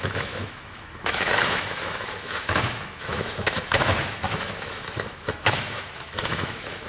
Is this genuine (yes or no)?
no